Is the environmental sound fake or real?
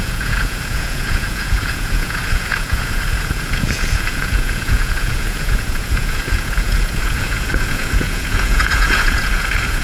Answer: fake